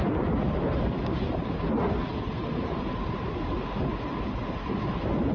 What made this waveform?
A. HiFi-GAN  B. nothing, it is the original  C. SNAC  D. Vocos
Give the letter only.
B